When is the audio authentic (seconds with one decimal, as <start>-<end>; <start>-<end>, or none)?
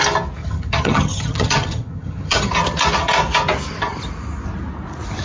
0.0-0.4; 2.5-5.2